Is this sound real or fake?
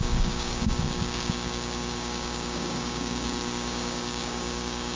fake